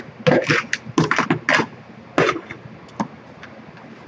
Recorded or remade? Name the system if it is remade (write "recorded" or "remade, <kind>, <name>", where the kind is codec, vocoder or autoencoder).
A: recorded